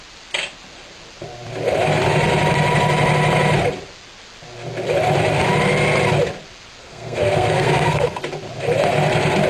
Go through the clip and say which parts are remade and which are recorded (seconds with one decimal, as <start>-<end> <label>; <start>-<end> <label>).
0.0-6.8 recorded; 6.8-8.2 remade; 8.2-9.5 recorded